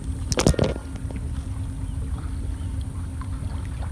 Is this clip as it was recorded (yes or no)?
yes